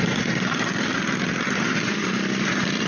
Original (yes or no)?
yes